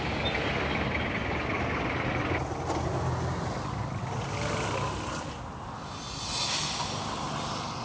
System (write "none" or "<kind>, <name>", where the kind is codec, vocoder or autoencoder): none